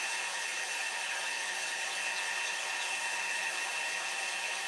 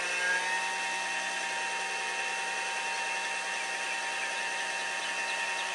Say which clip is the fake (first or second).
first